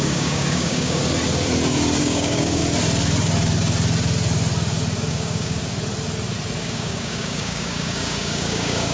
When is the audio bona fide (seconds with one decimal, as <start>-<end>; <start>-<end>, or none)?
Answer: 1.0-2.0; 2.6-5.1; 5.6-6.6